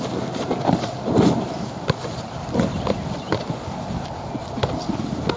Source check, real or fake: fake